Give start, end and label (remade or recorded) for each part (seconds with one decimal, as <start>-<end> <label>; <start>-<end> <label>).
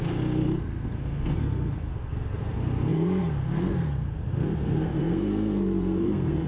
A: 0.0-6.5 remade